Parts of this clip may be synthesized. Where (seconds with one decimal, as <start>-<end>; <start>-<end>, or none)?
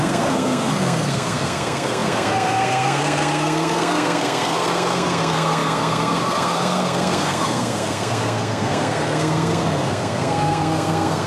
0.0-11.3